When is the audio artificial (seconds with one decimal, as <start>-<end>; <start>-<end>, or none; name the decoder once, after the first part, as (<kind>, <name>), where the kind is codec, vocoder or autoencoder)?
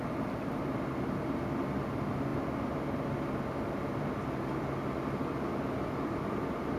none